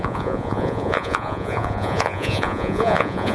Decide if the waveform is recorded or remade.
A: remade